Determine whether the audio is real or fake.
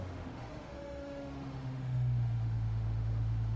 fake